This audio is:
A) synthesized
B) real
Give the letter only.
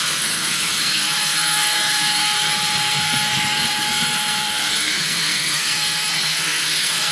A